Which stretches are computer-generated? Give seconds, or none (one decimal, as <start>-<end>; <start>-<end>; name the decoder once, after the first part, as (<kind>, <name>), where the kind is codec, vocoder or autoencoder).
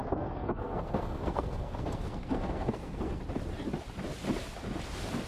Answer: 0.0-3.2 (codec, SNAC)